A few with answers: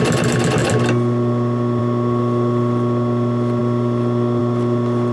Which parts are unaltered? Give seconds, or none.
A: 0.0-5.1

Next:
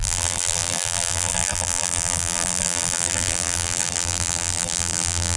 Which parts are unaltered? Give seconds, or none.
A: none

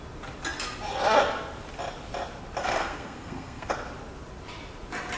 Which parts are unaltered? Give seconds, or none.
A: 0.0-2.6; 3.7-5.2

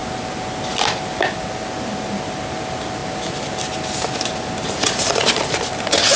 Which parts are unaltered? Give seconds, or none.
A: 0.0-6.2